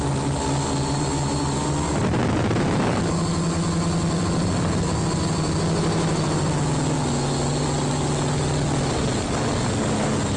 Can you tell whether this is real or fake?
real